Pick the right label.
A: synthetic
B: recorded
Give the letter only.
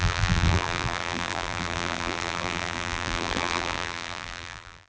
A